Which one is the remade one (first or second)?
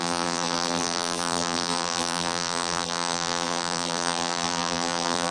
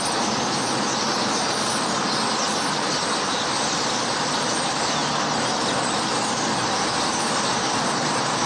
first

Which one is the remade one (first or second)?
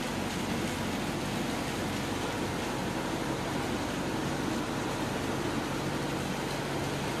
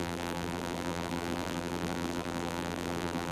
second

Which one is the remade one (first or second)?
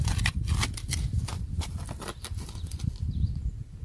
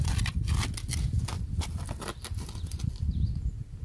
first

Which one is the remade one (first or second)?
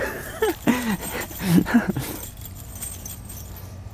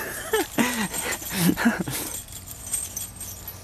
first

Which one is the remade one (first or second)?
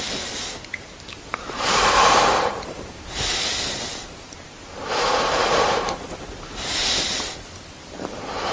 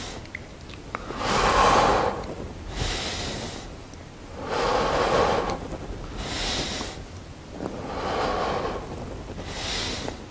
first